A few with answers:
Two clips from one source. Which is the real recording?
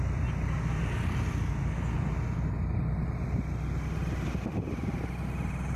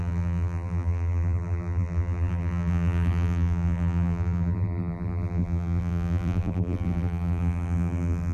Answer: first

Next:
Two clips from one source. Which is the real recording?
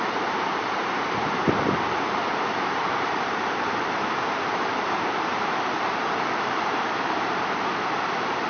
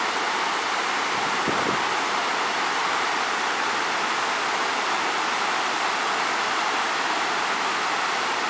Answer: second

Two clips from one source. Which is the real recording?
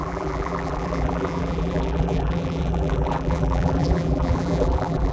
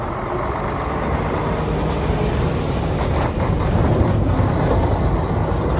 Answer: second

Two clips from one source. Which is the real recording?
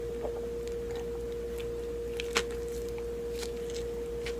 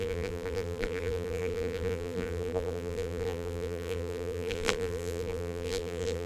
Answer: first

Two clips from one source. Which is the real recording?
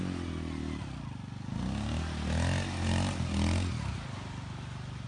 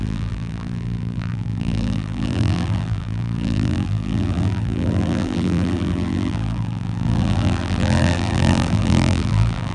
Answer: first